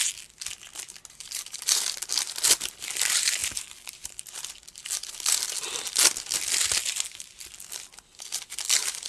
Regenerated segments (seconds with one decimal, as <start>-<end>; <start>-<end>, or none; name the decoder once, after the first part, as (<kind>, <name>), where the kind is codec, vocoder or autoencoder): none